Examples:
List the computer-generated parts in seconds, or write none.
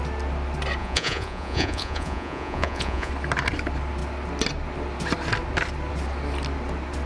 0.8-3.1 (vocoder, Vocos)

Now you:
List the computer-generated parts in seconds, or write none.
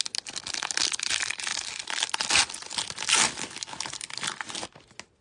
none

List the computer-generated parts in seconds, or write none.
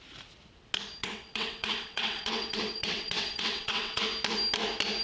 1.0-4.0 (vocoder, WaveNeXt)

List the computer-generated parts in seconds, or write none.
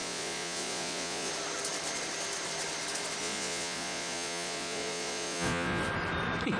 0.0-1.3 (vocoder, Vocos); 3.2-5.8